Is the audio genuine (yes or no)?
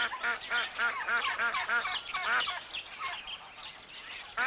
yes